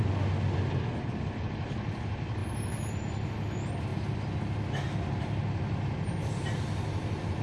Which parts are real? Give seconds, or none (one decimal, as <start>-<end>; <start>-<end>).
0.0-3.9; 4.4-7.4